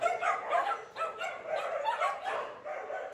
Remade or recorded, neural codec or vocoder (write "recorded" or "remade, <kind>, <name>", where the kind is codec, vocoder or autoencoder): remade, vocoder, BigVGAN v2